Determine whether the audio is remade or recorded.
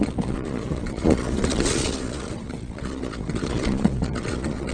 remade